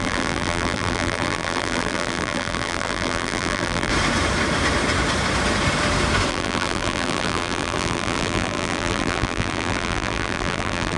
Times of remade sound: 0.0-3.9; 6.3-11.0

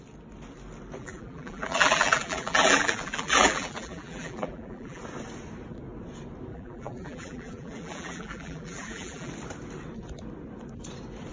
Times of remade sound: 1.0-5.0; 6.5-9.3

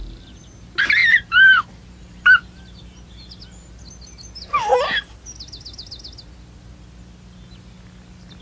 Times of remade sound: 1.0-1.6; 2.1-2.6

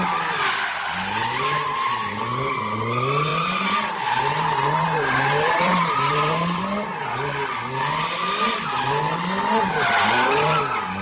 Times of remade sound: 3.3-6.6

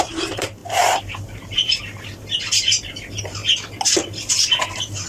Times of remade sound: 0.0-3.4

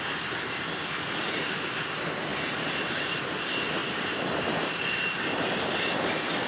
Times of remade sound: 2.3-3.0